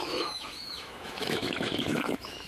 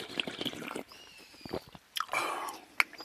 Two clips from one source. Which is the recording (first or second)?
second